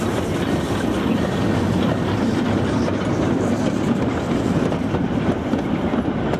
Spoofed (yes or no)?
no